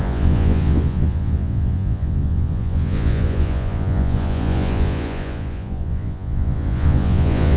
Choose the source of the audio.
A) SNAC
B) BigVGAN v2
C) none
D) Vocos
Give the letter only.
D